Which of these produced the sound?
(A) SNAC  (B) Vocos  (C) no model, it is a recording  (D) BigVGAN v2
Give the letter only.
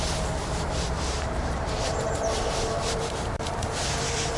D